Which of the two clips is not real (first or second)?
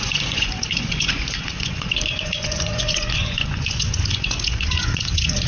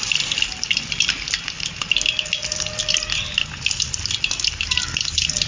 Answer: first